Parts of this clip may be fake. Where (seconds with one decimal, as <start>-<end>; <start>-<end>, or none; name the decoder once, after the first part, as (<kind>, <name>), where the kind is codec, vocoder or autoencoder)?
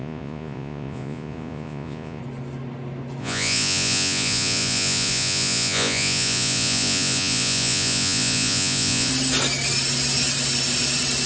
0.0-2.2 (vocoder, Vocos); 3.2-9.1